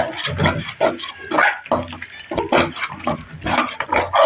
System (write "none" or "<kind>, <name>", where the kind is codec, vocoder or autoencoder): none